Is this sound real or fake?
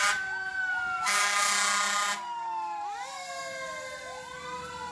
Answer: real